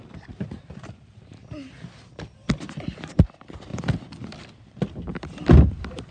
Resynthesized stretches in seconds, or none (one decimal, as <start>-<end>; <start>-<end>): 0.0-1.4; 3.1-3.7

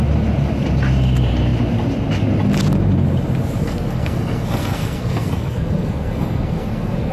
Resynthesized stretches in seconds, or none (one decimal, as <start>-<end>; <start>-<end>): 3.6-7.1

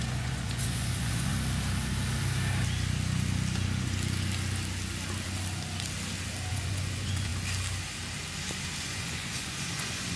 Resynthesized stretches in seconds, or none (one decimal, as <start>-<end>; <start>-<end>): 0.0-1.3; 6.5-7.3; 8.8-10.2

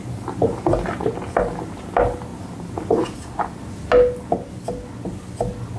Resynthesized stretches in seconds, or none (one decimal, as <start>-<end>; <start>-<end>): none

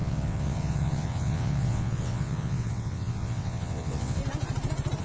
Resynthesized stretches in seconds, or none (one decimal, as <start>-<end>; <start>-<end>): 0.0-4.2